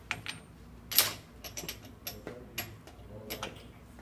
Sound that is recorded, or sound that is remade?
recorded